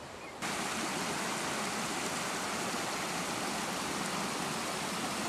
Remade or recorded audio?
recorded